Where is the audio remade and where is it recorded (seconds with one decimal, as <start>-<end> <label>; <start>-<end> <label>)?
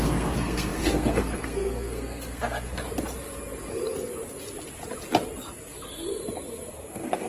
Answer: 0.0-2.8 remade; 2.8-6.7 recorded; 6.7-7.3 remade